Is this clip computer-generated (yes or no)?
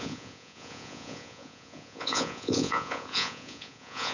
yes